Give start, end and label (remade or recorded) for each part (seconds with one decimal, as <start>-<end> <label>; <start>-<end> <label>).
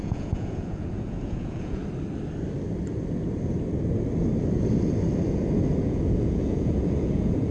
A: 0.0-1.8 remade; 1.8-5.8 recorded; 5.8-7.5 remade